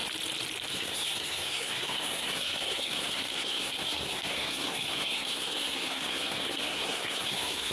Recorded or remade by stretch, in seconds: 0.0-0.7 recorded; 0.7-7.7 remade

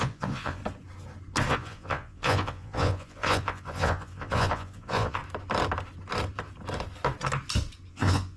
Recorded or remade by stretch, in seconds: 0.0-0.6 remade; 0.6-1.5 recorded; 1.5-5.2 remade; 5.2-7.9 recorded; 7.9-8.4 remade